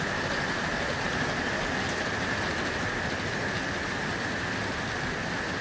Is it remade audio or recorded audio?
recorded